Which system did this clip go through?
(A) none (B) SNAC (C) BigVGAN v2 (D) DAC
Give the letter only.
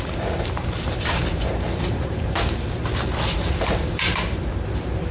C